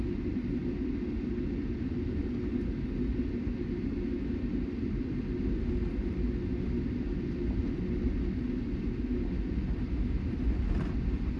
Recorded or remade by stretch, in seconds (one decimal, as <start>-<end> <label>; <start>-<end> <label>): 0.0-11.4 recorded